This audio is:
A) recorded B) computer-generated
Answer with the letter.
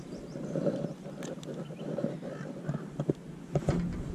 A